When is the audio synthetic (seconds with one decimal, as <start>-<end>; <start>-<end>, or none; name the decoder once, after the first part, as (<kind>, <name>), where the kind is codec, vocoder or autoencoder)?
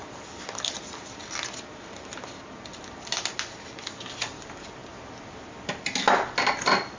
none